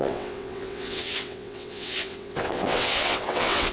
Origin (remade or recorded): remade